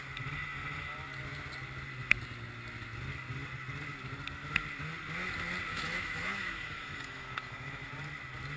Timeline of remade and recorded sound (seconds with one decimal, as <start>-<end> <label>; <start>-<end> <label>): 0.0-5.7 recorded; 5.7-7.9 remade; 7.9-8.6 recorded